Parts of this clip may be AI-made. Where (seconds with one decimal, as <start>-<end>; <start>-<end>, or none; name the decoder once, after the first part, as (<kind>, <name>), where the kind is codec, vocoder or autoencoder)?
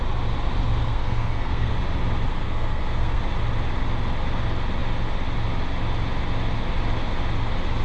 0.8-1.7 (codec, SNAC); 2.3-3.2